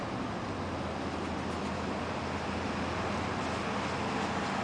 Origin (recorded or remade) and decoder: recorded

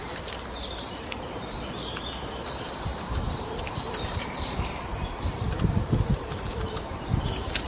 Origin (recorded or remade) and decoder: remade, vocoder, BigVGAN v2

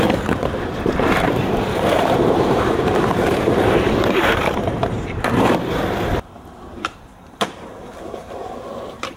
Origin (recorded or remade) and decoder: remade, vocoder, BigVGAN v2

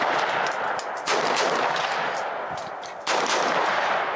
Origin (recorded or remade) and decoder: remade, vocoder, BigVGAN v2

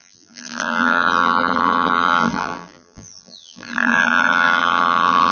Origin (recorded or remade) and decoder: remade, vocoder, BigVGAN v2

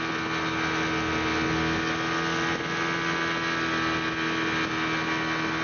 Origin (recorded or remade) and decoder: recorded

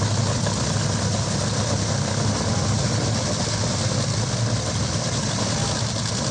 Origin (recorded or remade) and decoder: recorded